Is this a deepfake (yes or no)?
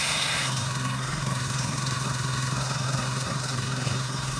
yes